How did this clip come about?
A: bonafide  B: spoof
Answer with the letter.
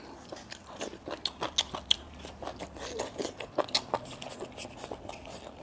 A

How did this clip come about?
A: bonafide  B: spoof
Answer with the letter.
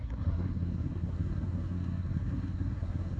B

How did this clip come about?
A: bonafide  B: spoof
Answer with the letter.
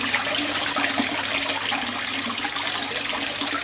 A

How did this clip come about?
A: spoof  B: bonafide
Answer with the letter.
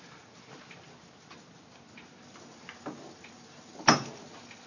B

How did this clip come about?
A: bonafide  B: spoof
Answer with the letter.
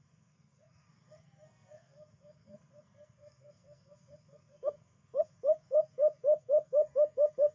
B